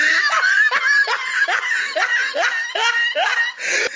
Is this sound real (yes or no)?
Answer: yes